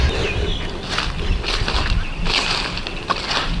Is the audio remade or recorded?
recorded